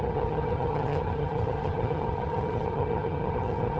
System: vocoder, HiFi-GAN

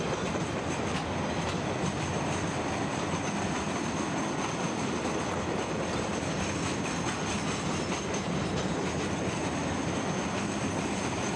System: none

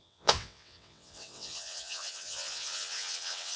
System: vocoder, WaveNeXt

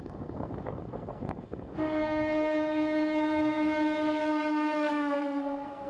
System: codec, SNAC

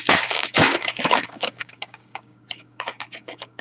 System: codec, DAC